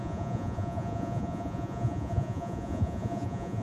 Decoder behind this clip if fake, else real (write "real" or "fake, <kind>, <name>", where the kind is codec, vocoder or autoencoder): fake, vocoder, Vocos